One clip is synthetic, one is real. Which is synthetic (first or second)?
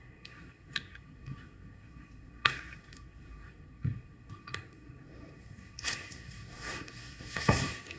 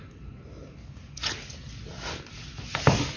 first